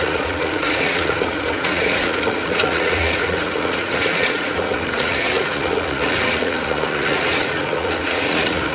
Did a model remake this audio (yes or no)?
yes